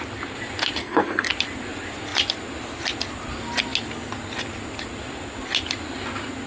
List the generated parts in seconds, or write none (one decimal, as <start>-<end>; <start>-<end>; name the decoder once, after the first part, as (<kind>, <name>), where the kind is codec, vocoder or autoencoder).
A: 0.8-1.3 (codec, SNAC)